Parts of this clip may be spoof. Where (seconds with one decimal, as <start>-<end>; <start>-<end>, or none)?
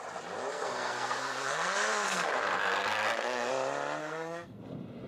0.5-3.5; 4.0-4.6